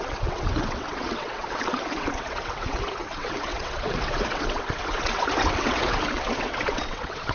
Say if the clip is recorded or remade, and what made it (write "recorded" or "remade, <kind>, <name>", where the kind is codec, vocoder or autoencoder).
remade, vocoder, WaveNeXt